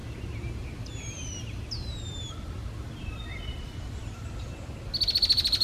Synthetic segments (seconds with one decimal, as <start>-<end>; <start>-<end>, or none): 0.0-1.6; 3.3-4.0